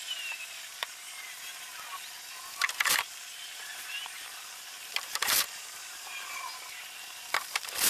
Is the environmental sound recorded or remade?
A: remade